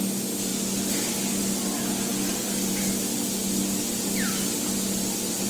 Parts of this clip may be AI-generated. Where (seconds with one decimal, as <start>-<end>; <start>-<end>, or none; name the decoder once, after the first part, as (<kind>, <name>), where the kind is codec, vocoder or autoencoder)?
none